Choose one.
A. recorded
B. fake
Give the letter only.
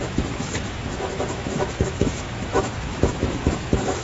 B